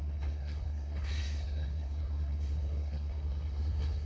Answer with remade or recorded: remade